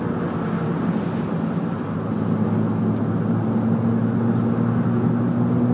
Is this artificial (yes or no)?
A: no